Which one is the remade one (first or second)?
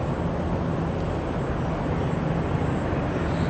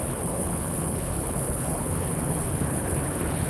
second